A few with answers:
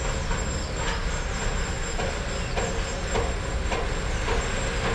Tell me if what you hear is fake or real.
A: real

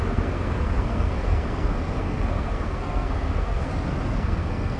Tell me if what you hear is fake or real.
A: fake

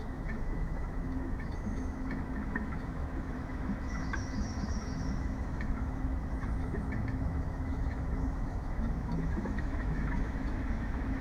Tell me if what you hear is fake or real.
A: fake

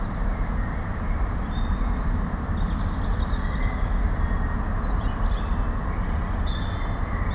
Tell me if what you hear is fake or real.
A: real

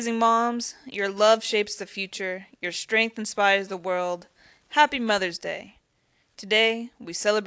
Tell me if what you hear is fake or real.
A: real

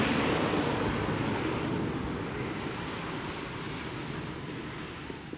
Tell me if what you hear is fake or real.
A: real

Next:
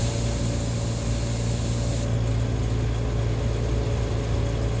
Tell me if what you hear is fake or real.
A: real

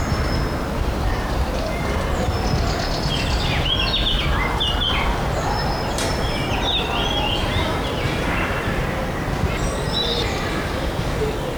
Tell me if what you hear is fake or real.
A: real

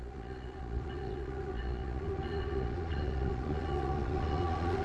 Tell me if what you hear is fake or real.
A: fake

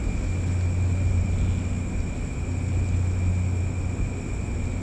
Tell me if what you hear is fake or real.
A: real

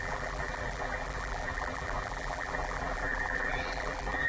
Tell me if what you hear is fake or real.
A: fake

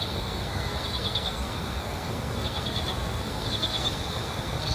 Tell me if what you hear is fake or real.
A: fake